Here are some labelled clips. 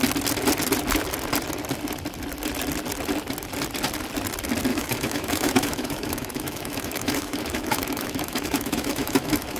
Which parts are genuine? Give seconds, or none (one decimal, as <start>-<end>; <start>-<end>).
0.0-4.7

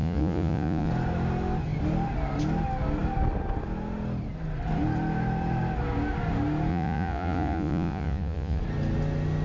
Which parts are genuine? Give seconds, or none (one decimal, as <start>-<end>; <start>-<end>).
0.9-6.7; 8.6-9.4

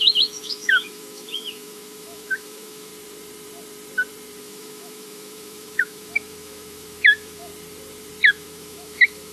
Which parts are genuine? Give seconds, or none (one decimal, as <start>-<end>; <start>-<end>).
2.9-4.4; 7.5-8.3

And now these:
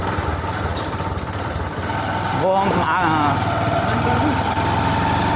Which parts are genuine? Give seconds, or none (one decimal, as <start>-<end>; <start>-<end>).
0.0-5.4

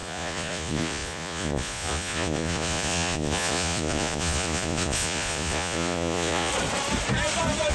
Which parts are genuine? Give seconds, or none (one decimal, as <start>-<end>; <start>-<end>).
6.5-7.7

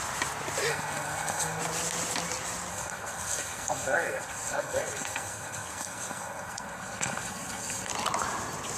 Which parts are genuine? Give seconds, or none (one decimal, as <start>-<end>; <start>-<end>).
0.0-0.7; 1.6-2.7; 7.9-8.8

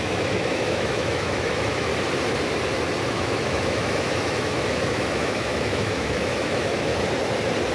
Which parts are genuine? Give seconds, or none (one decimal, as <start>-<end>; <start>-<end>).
1.9-3.0; 6.9-7.7